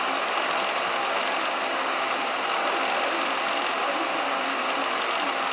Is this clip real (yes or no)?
yes